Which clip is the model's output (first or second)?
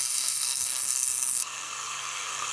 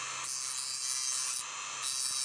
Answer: first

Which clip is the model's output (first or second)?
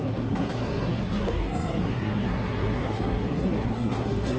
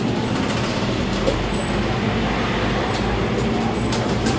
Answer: first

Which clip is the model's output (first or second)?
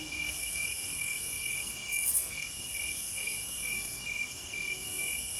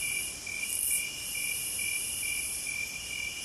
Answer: first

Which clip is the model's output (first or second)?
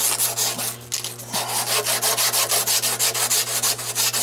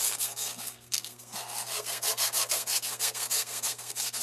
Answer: second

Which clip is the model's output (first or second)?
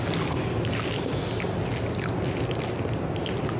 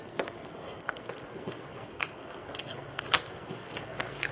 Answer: second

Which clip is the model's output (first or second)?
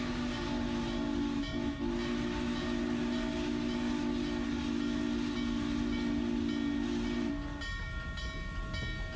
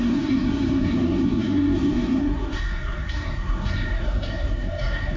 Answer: second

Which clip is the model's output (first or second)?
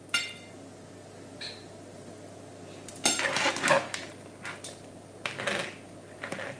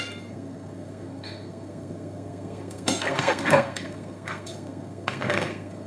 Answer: second